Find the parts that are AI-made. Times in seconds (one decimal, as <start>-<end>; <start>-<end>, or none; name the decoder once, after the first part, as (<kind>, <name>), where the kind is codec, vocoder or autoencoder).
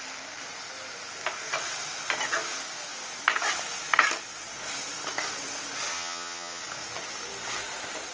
5.9-6.6 (vocoder, HiFi-GAN)